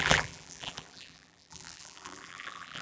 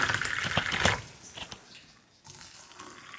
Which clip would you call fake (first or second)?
first